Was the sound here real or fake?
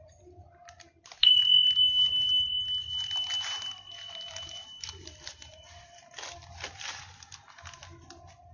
real